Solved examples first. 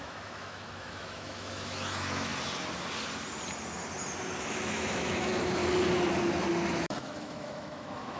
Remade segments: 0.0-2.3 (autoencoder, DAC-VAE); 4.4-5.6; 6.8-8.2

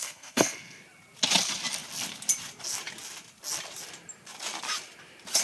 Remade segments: 0.0-0.8 (codec, SNAC)

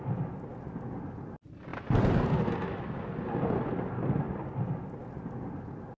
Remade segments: none